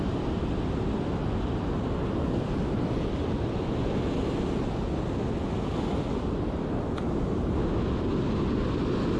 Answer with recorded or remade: recorded